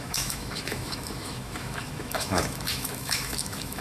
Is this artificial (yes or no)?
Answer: yes